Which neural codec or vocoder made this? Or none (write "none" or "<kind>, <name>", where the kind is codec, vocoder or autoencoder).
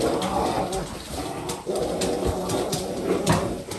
none